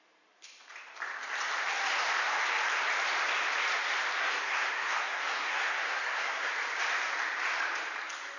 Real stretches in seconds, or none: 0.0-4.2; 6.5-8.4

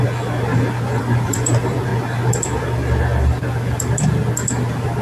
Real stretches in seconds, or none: 0.0-1.0; 1.9-5.0

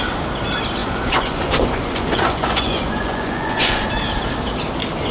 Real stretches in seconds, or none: 0.0-0.8; 3.9-5.1

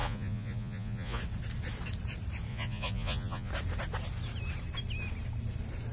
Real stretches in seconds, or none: 1.2-2.5; 3.5-5.9